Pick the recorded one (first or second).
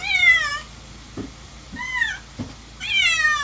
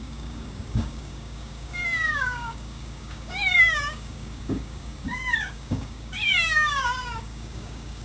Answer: first